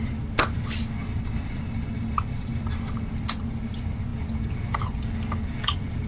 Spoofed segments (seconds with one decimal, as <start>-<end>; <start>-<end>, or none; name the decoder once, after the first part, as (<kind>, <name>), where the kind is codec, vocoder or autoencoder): 1.0-3.1 (vocoder, BigVGAN v2)